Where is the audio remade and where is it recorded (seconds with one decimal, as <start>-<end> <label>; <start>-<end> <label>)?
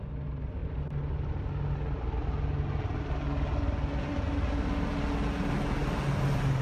0.0-6.6 recorded